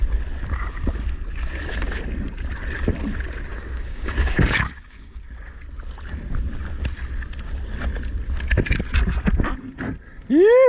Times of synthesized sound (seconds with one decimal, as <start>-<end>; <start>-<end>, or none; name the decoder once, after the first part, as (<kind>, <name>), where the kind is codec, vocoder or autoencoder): 3.5-5.2 (codec, DAC)